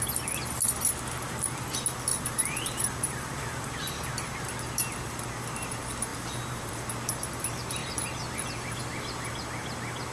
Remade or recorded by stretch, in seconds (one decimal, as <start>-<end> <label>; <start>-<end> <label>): 0.0-2.1 recorded; 2.1-4.1 remade; 4.1-6.1 recorded; 6.1-6.7 remade; 6.7-10.1 recorded